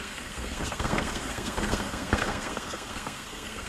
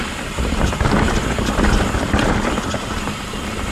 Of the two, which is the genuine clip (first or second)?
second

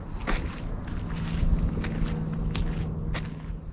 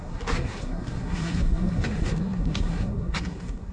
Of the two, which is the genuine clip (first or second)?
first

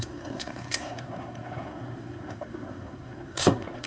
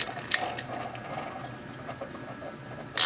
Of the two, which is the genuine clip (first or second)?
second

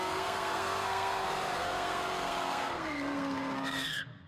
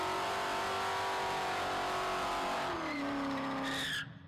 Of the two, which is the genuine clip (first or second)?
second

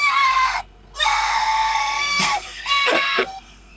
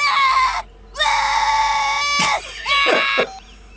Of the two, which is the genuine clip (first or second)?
second